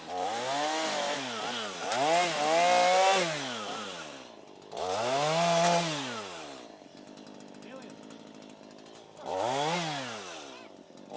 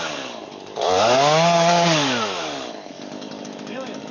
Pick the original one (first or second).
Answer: first